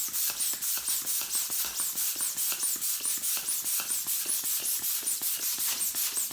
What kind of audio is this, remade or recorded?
recorded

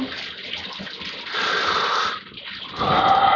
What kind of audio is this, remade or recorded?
recorded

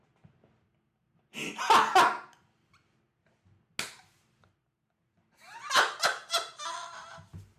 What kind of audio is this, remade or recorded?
recorded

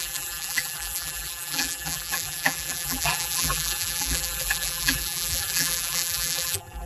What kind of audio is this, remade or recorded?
remade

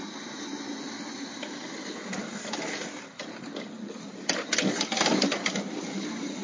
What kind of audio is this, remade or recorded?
recorded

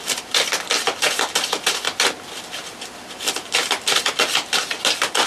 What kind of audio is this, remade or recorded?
recorded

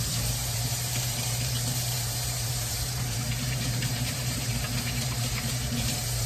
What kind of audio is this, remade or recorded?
remade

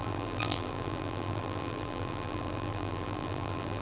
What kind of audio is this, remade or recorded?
remade